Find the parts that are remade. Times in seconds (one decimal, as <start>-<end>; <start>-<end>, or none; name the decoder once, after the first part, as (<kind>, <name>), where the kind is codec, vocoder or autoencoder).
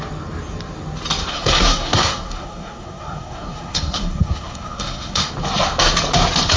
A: 1.3-5.3 (codec, SNAC)